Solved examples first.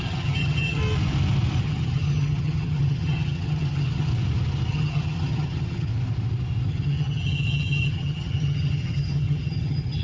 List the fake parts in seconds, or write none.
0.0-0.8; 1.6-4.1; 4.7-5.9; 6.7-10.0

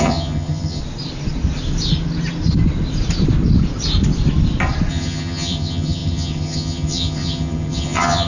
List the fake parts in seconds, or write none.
0.0-0.8; 4.9-8.3

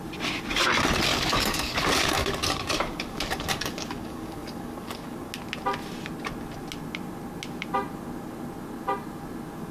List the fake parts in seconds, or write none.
1.1-5.3

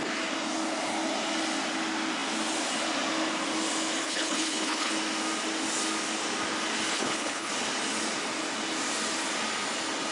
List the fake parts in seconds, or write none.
4.0-4.9; 6.9-7.5